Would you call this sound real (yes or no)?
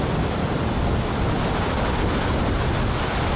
yes